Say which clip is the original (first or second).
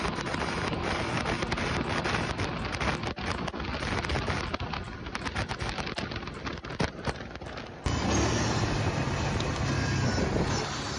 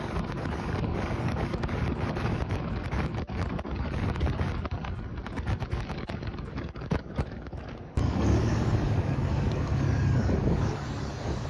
first